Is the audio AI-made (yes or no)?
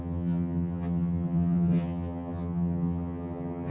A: yes